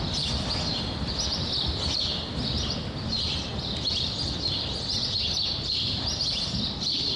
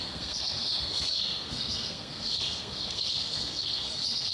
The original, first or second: first